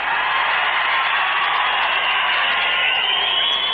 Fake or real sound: real